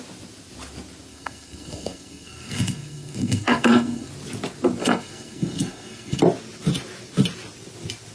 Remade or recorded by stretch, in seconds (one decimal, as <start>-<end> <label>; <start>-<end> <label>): 0.0-1.1 recorded; 1.1-4.1 remade; 4.1-4.8 recorded; 4.8-6.2 remade; 6.2-8.1 recorded